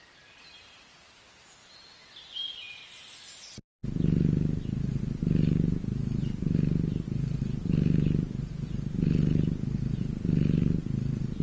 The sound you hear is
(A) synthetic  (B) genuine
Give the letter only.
B